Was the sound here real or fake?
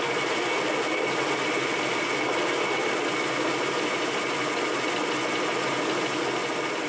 real